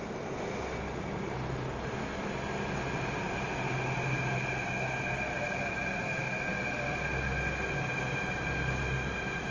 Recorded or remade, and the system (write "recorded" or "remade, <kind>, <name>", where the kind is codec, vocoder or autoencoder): recorded